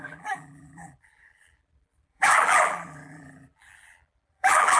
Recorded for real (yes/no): no